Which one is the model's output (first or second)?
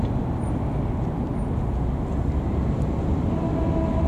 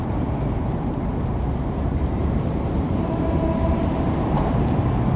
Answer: second